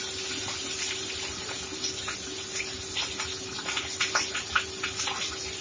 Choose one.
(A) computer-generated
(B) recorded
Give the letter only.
B